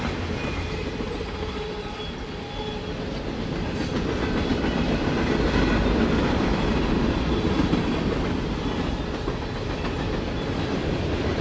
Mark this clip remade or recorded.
recorded